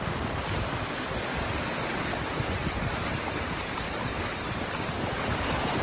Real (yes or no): yes